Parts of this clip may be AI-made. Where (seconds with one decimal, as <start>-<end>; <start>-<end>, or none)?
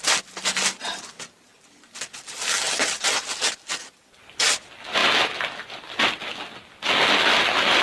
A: none